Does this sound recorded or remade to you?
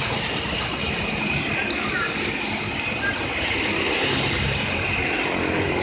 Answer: recorded